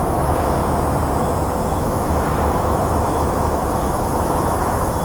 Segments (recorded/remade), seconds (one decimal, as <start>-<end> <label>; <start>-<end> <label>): 0.0-0.6 remade; 0.6-1.8 recorded; 1.8-5.0 remade